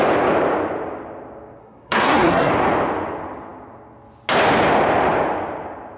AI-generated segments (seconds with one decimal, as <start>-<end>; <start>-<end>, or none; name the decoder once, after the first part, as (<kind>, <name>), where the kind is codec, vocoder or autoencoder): 1.6-2.5 (codec, SNAC)